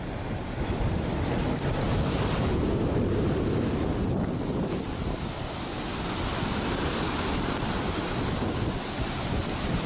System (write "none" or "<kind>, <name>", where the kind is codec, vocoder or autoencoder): none